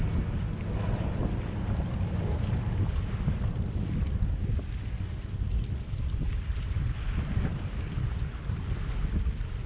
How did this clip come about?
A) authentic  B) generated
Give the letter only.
A